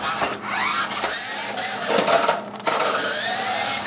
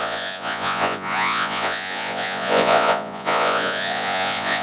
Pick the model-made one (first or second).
second